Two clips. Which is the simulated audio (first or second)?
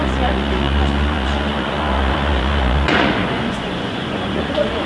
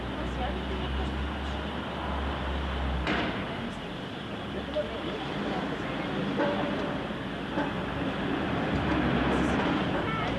first